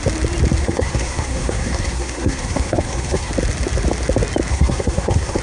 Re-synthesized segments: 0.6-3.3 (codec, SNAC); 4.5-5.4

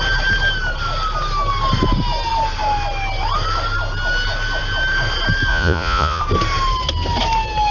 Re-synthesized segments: 5.5-6.2 (vocoder, Vocos)

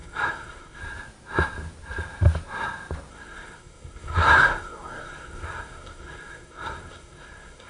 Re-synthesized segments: 0.0-0.8 (codec, SNAC); 3.1-7.7

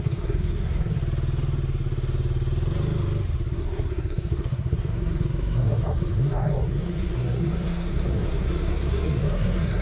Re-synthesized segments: 0.0-1.0 (codec, SNAC); 3.5-9.8

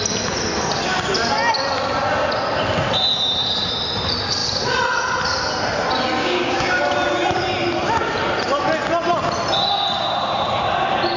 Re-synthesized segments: 6.2-6.8 (codec, DAC)

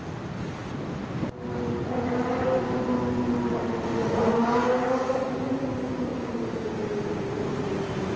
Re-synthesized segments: none

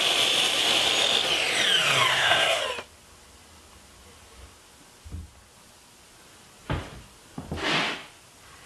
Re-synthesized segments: 2.1-2.6 (codec, SNAC)

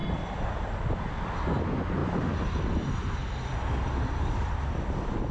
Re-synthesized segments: none